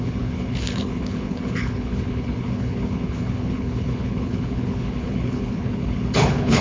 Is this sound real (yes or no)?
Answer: no